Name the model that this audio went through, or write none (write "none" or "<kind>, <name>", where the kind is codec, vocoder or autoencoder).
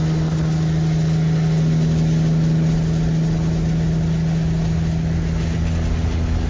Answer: none